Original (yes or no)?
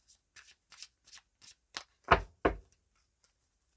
yes